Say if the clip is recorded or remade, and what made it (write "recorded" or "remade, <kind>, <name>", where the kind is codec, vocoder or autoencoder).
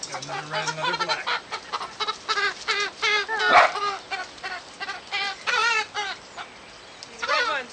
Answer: recorded